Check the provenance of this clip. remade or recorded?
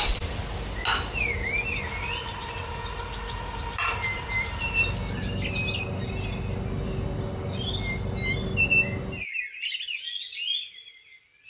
recorded